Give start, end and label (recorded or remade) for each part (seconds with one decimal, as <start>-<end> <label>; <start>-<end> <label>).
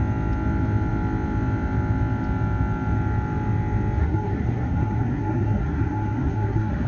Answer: 0.0-4.0 recorded; 4.0-6.9 remade